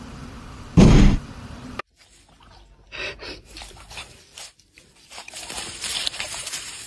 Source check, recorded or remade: remade